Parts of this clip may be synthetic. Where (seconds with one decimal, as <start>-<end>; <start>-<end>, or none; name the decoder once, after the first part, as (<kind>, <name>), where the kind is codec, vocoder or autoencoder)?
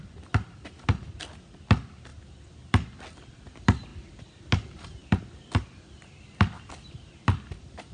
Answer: none